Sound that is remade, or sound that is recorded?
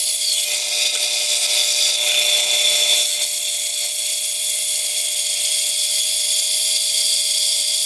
recorded